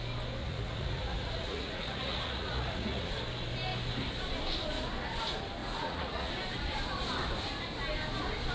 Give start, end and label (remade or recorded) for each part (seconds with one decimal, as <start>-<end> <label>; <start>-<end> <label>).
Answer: 0.0-0.4 recorded; 0.4-3.2 remade; 3.2-5.6 recorded; 5.6-6.3 remade; 6.3-8.5 recorded